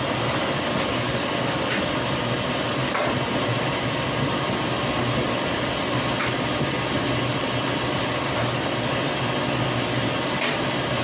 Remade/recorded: recorded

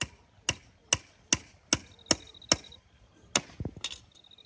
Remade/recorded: recorded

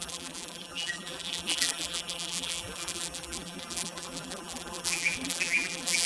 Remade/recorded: remade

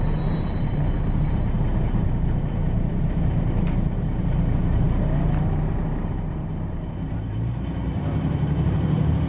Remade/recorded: remade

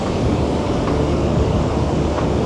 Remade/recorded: remade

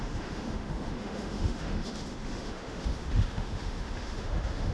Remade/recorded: remade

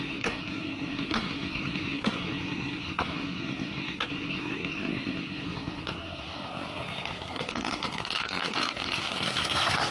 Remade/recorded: remade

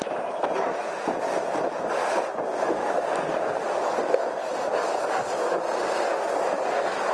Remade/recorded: recorded